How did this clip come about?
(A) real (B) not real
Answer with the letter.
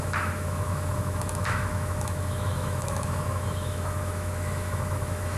B